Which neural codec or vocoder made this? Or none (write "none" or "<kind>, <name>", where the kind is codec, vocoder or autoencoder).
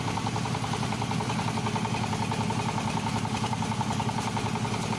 none